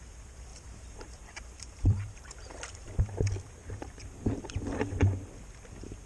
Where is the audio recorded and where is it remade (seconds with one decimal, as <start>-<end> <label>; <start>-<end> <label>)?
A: 0.0-0.5 recorded; 0.5-3.2 remade; 3.2-3.6 recorded; 3.6-6.1 remade